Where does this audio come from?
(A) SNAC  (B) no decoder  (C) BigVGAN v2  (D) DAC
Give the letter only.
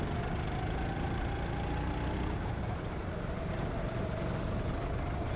B